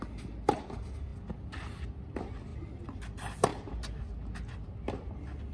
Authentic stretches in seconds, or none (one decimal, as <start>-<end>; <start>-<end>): 0.0-5.5